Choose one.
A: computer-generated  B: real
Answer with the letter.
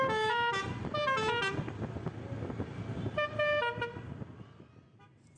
B